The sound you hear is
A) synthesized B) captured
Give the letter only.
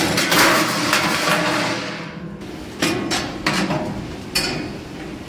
B